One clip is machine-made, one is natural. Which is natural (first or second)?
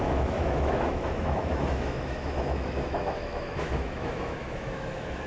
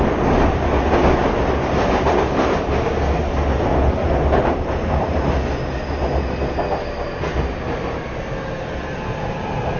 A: second